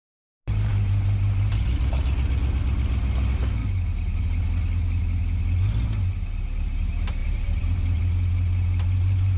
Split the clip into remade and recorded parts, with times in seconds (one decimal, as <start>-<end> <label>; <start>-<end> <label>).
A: 0.0-7.2 recorded; 7.2-8.0 remade; 8.0-9.4 recorded